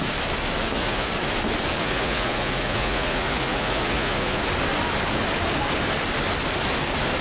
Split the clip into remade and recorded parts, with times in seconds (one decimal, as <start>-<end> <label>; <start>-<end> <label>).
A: 0.0-0.6 recorded; 0.6-1.1 remade; 1.1-1.8 recorded; 1.8-4.4 remade; 4.4-7.2 recorded